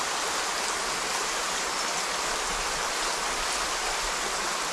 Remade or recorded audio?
recorded